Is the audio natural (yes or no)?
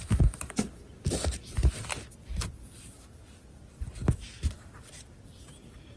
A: yes